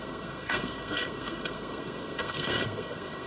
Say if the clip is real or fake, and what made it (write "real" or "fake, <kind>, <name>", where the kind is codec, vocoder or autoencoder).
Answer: fake, codec, SNAC